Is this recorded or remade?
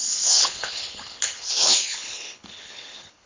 remade